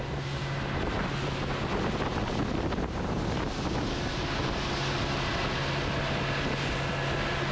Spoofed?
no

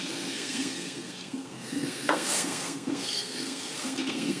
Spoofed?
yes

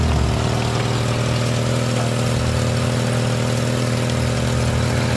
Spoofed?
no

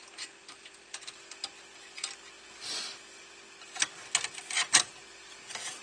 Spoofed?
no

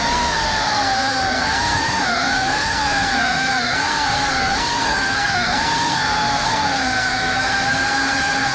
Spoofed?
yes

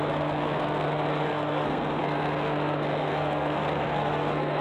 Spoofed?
yes